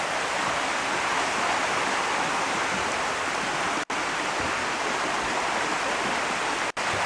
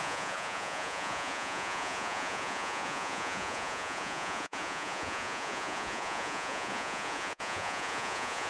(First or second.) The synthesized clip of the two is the second